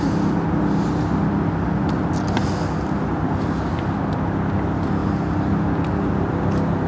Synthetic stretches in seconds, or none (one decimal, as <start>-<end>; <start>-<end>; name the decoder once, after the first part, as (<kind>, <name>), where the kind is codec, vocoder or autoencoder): none